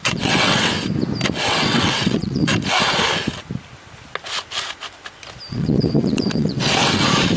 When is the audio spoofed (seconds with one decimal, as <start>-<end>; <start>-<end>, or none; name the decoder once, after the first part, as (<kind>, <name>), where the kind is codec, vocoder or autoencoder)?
0.0-0.7 (vocoder, WaveNeXt); 1.5-2.5; 5.5-6.9